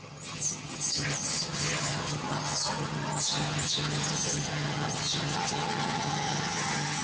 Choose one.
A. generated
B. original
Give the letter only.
A